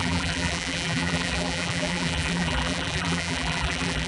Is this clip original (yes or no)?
no